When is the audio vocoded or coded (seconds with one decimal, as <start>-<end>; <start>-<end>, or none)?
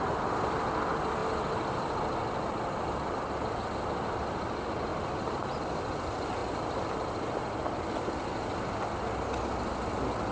none